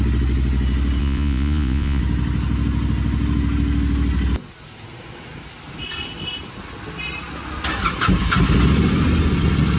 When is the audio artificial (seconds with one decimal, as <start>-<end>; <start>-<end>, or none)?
1.0-2.0